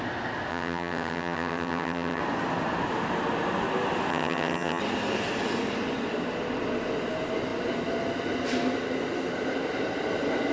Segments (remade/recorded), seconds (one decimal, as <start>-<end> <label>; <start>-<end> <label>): 0.0-0.5 recorded; 0.5-2.2 remade; 2.2-4.1 recorded; 4.1-4.8 remade; 4.8-10.5 recorded